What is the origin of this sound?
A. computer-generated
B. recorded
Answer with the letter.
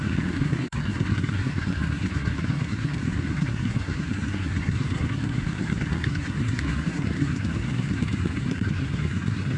A